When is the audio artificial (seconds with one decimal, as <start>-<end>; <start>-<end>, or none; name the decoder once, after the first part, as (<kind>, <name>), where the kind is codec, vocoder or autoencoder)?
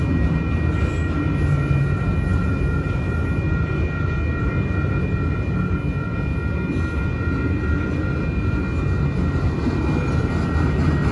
none